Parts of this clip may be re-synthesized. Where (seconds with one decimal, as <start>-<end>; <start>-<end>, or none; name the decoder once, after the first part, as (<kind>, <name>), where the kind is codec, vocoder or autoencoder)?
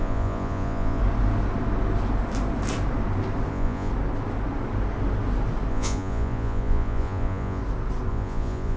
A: 0.0-1.0 (vocoder, Vocos); 3.5-3.9; 5.7-7.6; 8.1-8.8